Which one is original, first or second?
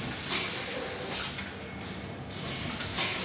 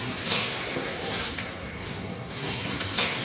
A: first